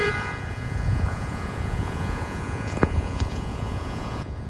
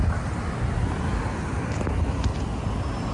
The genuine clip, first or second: second